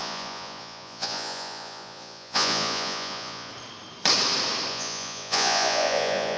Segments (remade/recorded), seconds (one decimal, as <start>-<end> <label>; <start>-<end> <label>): 0.0-3.5 remade; 3.5-4.7 recorded; 4.7-6.4 remade